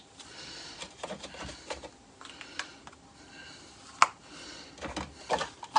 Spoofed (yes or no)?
no